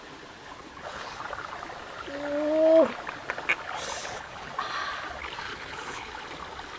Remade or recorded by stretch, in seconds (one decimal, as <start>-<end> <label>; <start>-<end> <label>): 0.0-0.6 recorded; 0.6-1.2 remade; 1.2-4.0 recorded; 4.0-4.5 remade; 4.5-5.5 recorded; 5.5-6.2 remade; 6.2-6.8 recorded